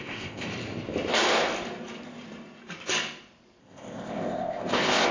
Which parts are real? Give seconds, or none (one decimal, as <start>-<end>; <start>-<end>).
0.5-3.6